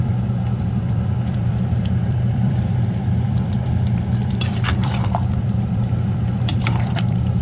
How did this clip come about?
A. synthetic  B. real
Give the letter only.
A